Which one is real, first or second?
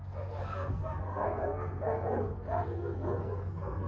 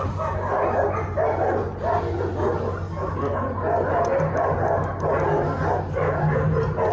second